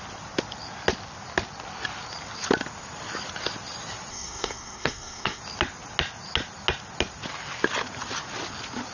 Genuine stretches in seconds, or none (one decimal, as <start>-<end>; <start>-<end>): 0.0-4.1; 5.4-8.9